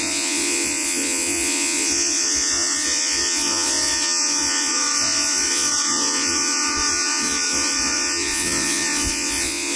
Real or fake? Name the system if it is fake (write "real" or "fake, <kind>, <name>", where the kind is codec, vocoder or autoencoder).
fake, vocoder, Vocos